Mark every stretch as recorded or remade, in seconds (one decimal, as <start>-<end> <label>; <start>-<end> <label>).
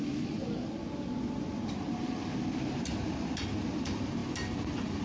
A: 0.0-5.0 recorded